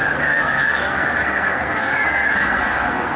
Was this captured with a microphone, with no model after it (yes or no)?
no